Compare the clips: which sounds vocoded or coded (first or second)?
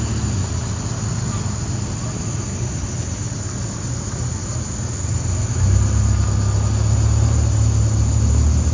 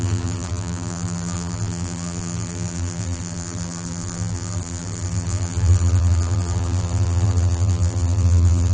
second